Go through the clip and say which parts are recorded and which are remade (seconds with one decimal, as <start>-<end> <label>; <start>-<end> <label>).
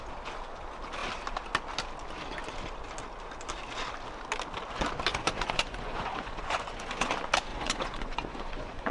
0.0-5.1 recorded; 5.1-7.1 remade; 7.1-7.5 recorded; 7.5-8.9 remade